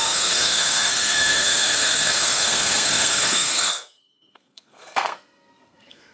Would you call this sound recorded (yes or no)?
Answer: no